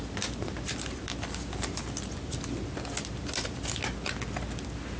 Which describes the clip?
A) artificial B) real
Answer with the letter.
B